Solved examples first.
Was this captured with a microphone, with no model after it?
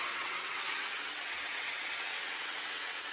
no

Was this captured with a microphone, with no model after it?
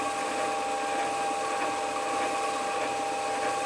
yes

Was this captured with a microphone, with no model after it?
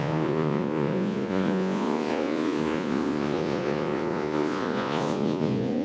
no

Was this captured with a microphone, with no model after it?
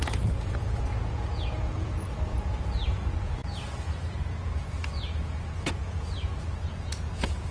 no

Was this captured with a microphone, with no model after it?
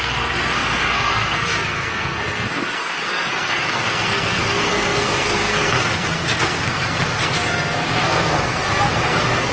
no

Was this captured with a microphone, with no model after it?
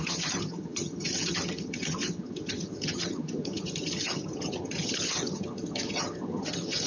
no